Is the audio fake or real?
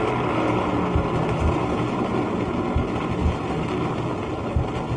real